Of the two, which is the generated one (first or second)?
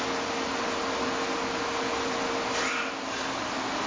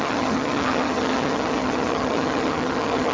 second